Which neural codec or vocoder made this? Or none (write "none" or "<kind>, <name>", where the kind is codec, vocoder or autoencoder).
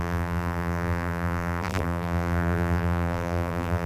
vocoder, BigVGAN v2